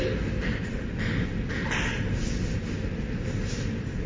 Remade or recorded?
recorded